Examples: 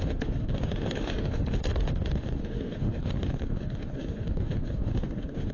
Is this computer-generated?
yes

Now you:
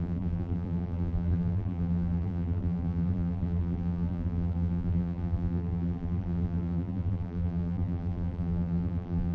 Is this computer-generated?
yes